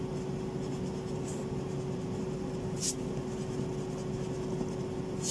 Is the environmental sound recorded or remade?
recorded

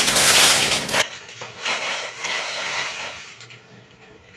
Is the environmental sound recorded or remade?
remade